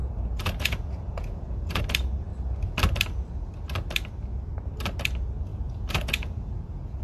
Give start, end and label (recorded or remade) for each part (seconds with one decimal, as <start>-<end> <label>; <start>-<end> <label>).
0.0-1.8 remade; 1.8-5.5 recorded; 5.5-7.0 remade